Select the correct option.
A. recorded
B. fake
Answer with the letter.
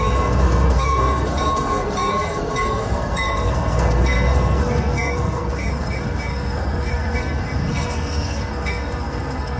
B